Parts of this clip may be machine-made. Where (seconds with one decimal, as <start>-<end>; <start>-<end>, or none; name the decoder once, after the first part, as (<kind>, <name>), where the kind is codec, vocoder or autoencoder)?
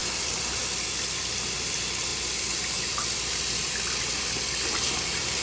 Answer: 0.0-5.4 (vocoder, BigVGAN v2)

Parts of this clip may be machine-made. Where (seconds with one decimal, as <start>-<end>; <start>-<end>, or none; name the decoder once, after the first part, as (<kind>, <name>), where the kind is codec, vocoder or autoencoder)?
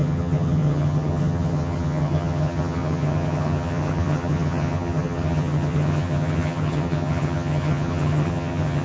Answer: 0.0-8.8 (vocoder, HiFi-GAN)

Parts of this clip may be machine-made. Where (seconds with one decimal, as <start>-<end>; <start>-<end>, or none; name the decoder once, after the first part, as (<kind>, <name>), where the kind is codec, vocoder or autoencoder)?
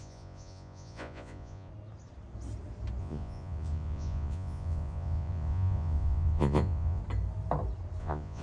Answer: 0.0-1.7 (vocoder, Vocos); 3.0-7.0; 8.0-8.4